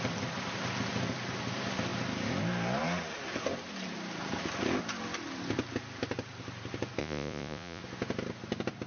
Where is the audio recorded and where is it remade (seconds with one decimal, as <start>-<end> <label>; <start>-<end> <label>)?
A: 0.0-7.0 recorded; 7.0-7.8 remade; 7.8-8.9 recorded